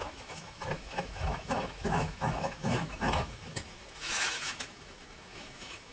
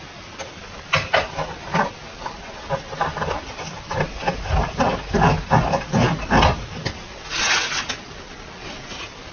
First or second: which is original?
second